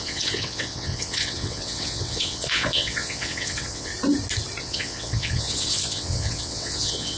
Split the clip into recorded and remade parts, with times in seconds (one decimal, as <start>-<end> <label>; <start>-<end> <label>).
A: 0.0-3.9 remade; 3.9-4.6 recorded; 4.6-7.2 remade